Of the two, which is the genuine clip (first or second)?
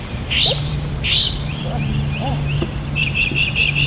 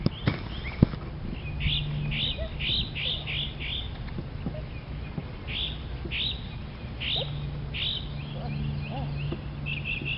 second